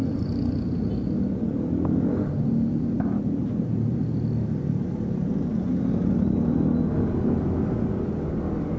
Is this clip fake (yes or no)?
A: no